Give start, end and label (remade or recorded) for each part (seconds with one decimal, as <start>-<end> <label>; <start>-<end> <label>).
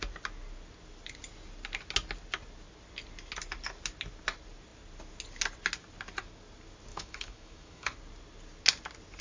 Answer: 0.0-6.9 recorded; 6.9-7.9 remade; 7.9-9.2 recorded